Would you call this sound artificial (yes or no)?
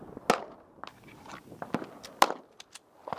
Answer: no